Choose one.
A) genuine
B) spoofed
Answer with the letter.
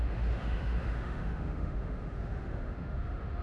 B